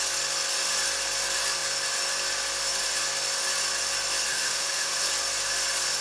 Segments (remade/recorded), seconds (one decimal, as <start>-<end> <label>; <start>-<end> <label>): 0.0-4.3 recorded; 4.3-4.9 remade; 4.9-6.0 recorded